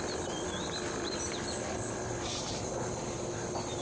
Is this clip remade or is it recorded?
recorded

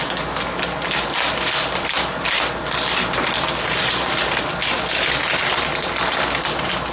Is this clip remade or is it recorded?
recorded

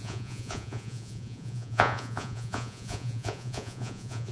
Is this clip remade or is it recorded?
remade